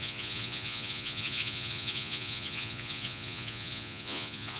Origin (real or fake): fake